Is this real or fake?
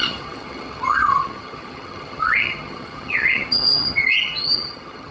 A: fake